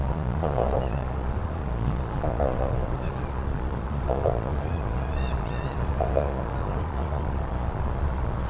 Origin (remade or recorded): remade